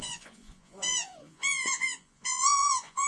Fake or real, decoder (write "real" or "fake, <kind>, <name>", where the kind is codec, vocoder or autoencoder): fake, vocoder, Vocos